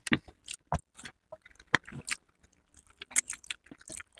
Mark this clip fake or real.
real